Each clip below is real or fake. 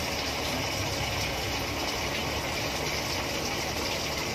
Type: real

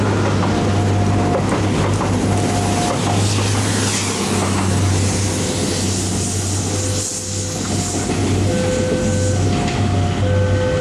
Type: real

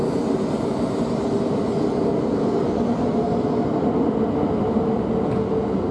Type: real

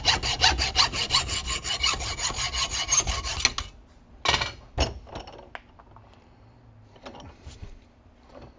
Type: real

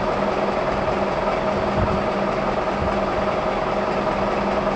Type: real